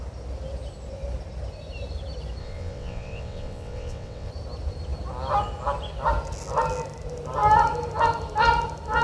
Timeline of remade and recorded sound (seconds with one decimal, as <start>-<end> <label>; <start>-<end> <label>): 0.0-2.4 recorded; 2.4-4.3 remade; 4.3-9.0 recorded